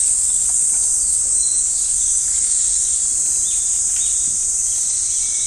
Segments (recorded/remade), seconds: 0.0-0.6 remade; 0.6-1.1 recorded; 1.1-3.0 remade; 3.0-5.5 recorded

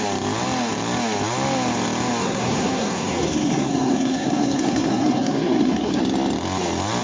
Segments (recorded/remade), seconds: 0.0-2.2 recorded; 2.2-6.0 remade; 6.0-7.0 recorded

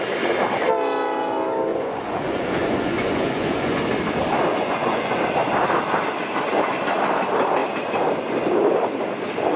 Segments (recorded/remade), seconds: 0.0-1.7 recorded; 1.7-3.8 remade; 3.8-4.5 recorded; 4.5-5.2 remade; 5.2-9.6 recorded

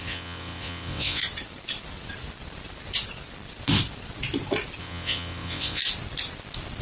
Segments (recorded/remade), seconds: 0.0-1.2 remade; 1.2-4.8 recorded; 4.8-5.8 remade; 5.8-6.8 recorded

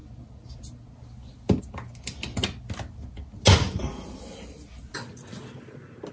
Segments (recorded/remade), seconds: 0.0-6.1 recorded